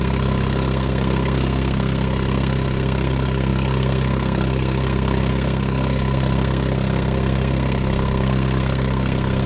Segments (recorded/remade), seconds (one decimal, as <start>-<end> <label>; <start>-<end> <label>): 0.0-9.5 remade